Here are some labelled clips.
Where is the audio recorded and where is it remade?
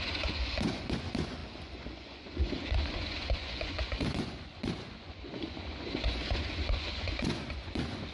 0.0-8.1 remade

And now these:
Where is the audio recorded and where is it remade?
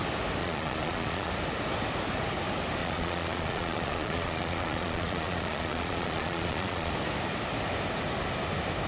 0.0-0.4 recorded; 0.4-1.3 remade; 1.3-2.8 recorded; 2.8-6.9 remade; 6.9-8.9 recorded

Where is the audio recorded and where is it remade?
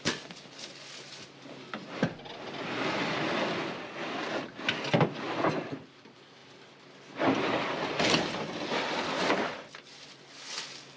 0.0-11.0 recorded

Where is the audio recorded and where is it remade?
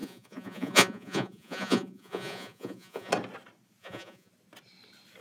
0.0-3.1 remade; 3.1-3.8 recorded; 3.8-4.3 remade; 4.3-5.2 recorded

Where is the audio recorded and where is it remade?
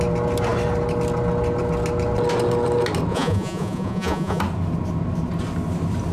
0.0-3.1 recorded; 3.1-4.4 remade; 4.4-6.1 recorded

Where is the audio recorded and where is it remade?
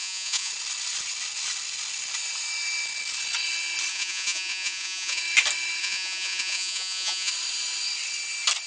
0.0-0.5 remade; 0.5-3.9 recorded; 3.9-5.2 remade; 5.2-5.8 recorded; 5.8-7.3 remade; 7.3-8.7 recorded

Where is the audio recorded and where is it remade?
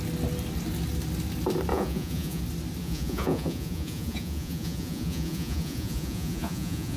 0.0-1.7 recorded; 1.7-2.4 remade; 2.4-2.8 recorded; 2.8-7.0 remade